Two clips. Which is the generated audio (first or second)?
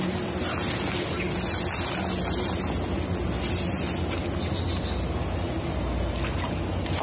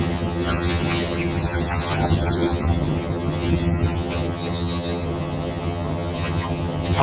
second